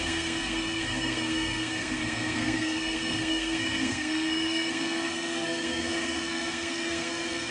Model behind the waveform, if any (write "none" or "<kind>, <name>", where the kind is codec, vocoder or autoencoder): codec, SNAC